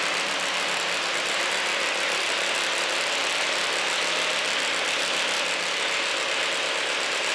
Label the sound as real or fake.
real